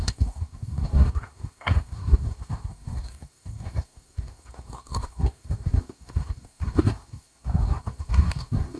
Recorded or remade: remade